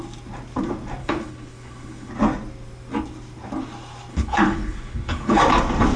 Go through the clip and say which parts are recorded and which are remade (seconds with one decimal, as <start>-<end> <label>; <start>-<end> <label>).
0.0-1.0 recorded; 1.0-2.1 remade; 2.1-4.1 recorded; 4.1-5.4 remade; 5.4-6.0 recorded